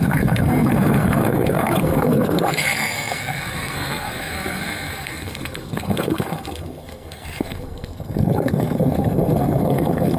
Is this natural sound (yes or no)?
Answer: no